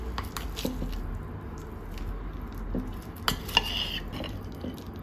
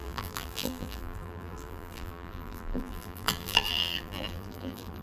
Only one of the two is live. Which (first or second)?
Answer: first